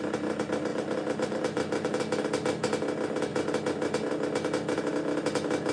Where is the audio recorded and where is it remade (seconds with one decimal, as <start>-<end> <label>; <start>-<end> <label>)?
0.0-0.7 recorded; 0.7-2.0 remade; 2.0-5.7 recorded